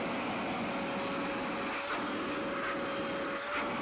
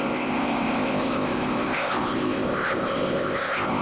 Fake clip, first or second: second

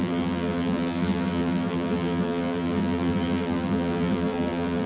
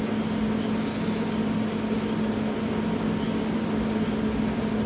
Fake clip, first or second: first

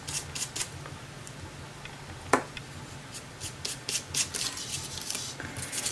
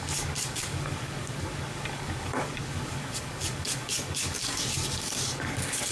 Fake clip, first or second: second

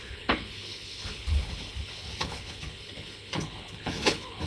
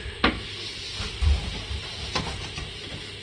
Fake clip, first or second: first